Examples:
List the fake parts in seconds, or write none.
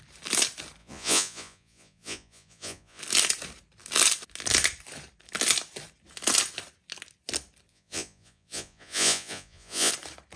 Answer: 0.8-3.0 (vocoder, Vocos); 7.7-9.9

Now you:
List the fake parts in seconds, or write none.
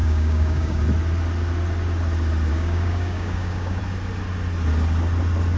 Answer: 0.0-0.8 (codec, DAC); 2.5-3.8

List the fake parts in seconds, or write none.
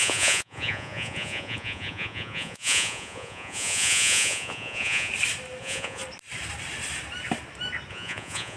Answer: 0.0-5.1 (vocoder, Vocos); 5.6-6.0; 7.9-8.6